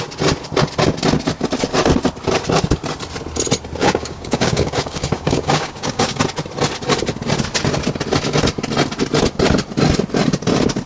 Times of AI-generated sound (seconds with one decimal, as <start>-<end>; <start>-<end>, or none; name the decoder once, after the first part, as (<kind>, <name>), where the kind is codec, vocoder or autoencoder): 3.8-6.2 (codec, DAC)